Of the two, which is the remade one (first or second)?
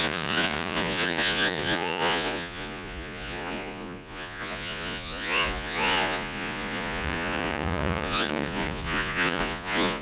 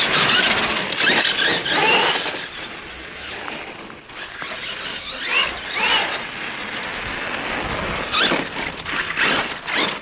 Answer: first